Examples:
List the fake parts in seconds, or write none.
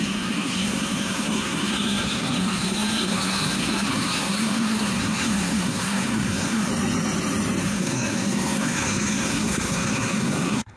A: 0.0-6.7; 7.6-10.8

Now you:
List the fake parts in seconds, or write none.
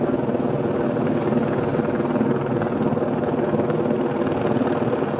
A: none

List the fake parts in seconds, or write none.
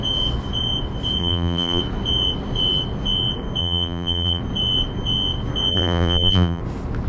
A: 1.2-1.8; 3.6-4.4; 5.7-6.6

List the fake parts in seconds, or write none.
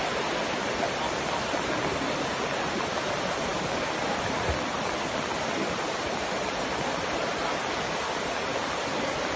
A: none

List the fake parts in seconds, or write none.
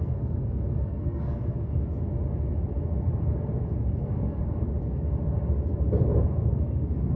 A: 0.0-1.7; 4.0-4.4; 6.3-7.2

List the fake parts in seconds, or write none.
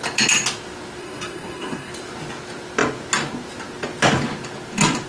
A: 1.0-1.9